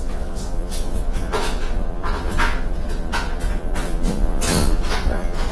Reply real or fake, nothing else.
fake